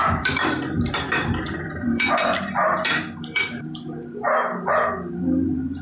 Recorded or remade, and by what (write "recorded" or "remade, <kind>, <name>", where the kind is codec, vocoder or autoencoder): remade, vocoder, BigVGAN v2